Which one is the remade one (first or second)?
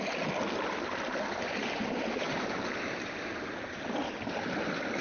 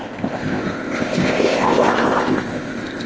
second